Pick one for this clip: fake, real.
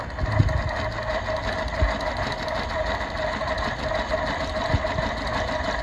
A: real